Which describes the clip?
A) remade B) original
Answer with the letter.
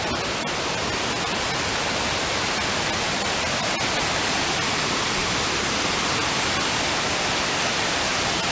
B